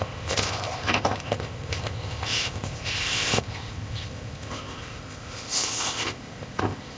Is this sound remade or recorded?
remade